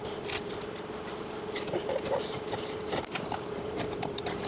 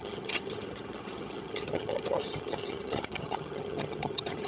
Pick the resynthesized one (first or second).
second